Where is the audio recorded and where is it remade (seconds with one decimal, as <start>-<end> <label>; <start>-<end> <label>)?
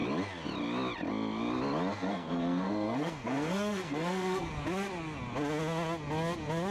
0.0-1.9 recorded; 1.9-4.5 remade; 4.5-6.7 recorded